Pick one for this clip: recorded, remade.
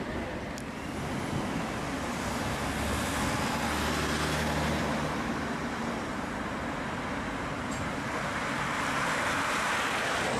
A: recorded